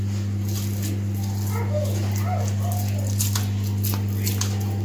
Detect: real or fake real